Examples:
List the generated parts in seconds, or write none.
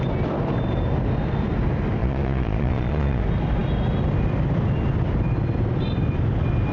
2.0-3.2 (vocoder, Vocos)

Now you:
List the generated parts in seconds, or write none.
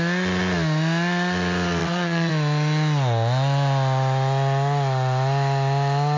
1.8-2.3 (vocoder, WaveNeXt)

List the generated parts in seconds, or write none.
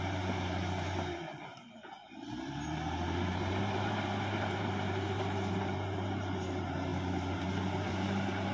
0.0-8.5 (vocoder, BigVGAN v2)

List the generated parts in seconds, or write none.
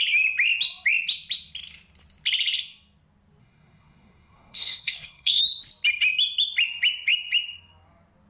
3.4-5.4 (codec, SNAC)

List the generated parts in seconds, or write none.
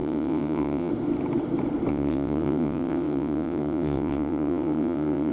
0.0-0.9 (vocoder, WaveNeXt); 1.9-5.3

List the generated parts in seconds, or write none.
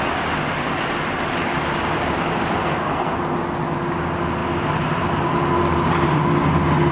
2.6-3.2 (codec, SNAC)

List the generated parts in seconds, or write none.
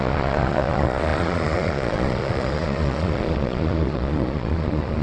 0.0-5.0 (vocoder, Vocos)